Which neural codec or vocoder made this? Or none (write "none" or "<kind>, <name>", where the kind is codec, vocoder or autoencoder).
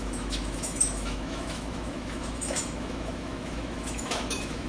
autoencoder, DAC-VAE